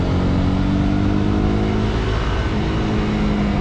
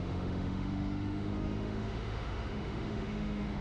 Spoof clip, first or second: second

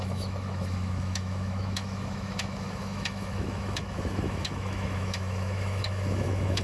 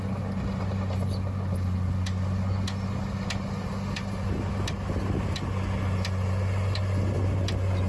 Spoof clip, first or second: first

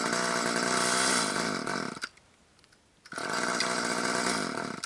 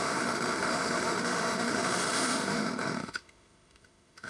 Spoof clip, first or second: second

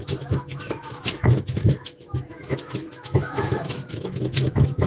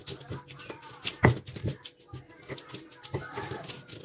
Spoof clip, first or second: first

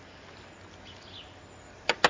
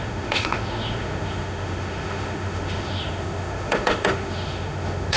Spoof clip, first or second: second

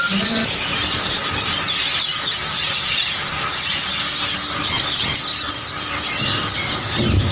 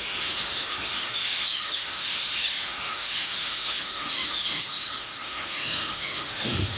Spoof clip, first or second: second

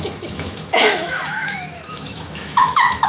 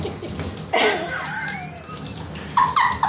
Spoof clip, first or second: first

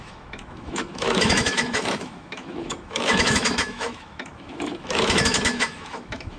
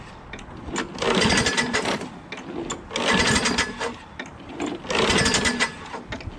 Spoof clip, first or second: first